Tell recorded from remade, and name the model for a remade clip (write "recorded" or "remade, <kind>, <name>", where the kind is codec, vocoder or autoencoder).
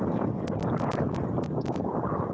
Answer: recorded